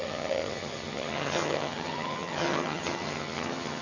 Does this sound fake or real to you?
fake